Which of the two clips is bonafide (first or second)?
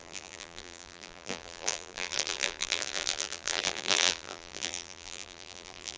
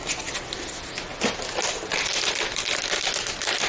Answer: second